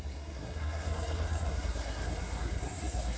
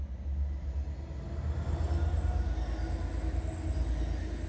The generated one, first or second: first